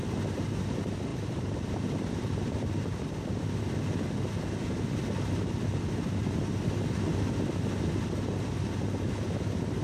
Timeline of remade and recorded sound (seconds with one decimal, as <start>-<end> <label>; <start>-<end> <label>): 0.0-1.1 recorded; 1.1-3.1 remade; 3.1-9.8 recorded